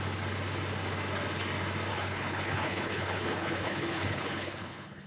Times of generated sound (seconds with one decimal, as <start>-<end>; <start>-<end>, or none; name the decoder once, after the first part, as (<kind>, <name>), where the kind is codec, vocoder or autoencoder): 1.9-5.1 (codec, HILCodec)